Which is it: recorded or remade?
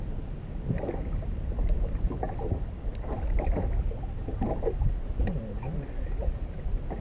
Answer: recorded